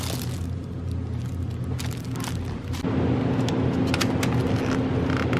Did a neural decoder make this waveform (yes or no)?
no